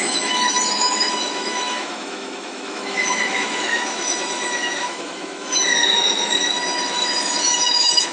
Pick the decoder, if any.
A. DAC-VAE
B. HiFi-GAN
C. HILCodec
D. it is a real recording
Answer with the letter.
A